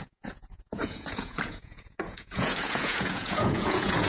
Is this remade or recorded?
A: remade